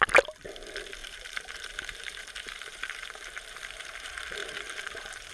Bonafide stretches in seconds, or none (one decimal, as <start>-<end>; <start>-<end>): 0.0-1.0; 4.0-4.4